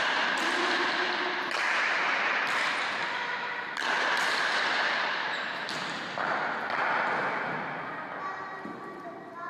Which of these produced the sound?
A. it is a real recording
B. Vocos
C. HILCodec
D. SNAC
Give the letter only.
A